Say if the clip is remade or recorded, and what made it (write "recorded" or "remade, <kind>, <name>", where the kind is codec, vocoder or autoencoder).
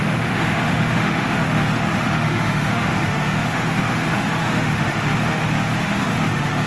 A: remade, autoencoder, DAC-VAE